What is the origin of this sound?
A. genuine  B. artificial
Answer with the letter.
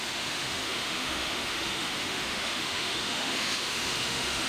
B